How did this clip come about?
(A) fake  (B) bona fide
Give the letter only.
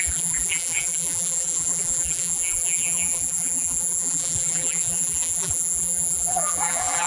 A